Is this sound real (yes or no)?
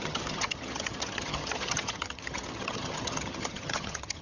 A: no